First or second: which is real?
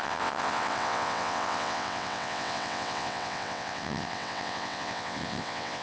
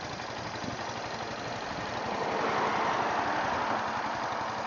second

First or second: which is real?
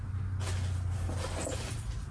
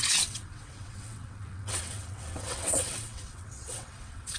first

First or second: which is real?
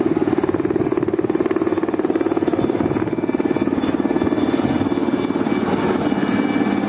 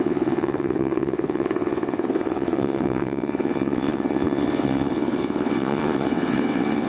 first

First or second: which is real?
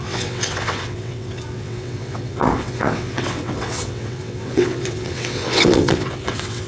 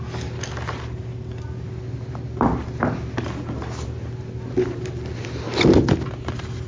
second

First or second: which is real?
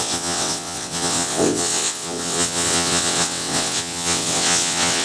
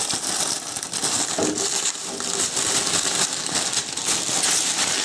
second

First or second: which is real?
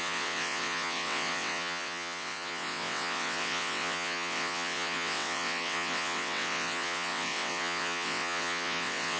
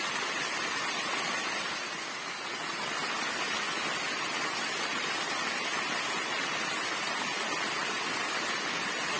second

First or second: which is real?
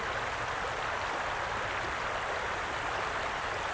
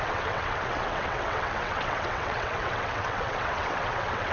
first